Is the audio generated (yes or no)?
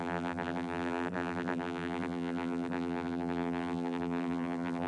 yes